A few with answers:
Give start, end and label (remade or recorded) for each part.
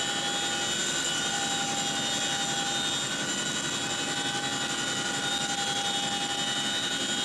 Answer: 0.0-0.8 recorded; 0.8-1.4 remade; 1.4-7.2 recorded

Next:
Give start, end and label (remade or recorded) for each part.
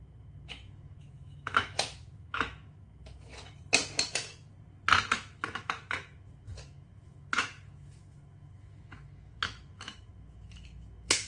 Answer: 0.0-3.3 remade; 3.3-4.1 recorded; 4.1-4.5 remade; 4.5-5.1 recorded; 5.1-11.3 remade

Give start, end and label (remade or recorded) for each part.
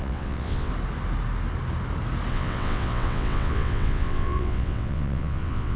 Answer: 0.0-0.7 remade; 0.7-2.3 recorded; 2.3-5.8 remade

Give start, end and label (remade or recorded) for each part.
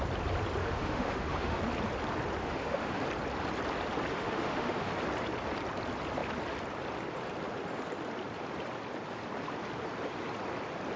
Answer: 0.0-0.6 recorded; 0.6-1.6 remade; 1.6-2.4 recorded; 2.4-3.0 remade; 3.0-4.1 recorded; 4.1-4.9 remade; 4.9-11.0 recorded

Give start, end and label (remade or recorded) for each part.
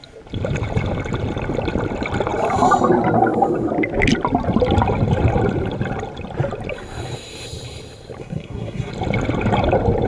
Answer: 0.0-8.2 recorded; 8.2-8.9 remade; 8.9-10.1 recorded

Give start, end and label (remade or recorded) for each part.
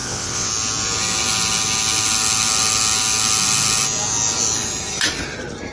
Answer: 0.0-0.5 remade; 0.5-5.7 recorded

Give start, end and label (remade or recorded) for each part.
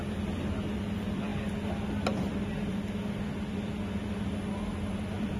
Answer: 0.0-5.4 recorded